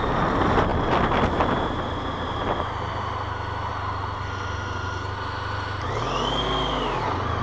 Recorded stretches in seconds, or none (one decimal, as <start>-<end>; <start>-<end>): 0.0-7.4